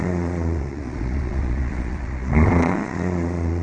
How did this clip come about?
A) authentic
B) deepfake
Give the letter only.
B